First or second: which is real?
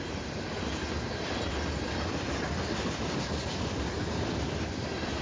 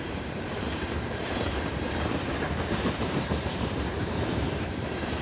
first